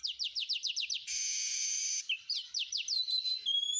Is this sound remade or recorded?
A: recorded